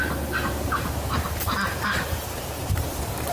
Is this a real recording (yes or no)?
no